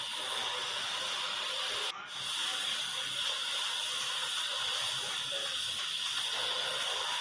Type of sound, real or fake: real